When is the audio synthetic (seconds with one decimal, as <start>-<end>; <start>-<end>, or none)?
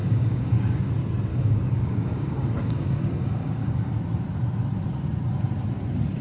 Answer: 0.0-0.9; 1.3-3.9